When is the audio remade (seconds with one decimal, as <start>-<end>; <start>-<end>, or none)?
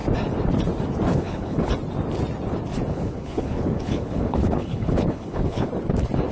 1.1-1.7; 2.9-5.7